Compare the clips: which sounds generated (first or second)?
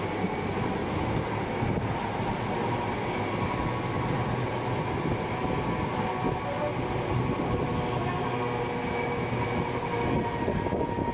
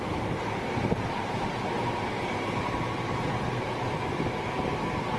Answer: second